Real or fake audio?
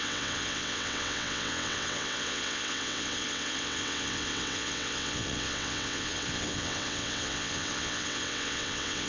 fake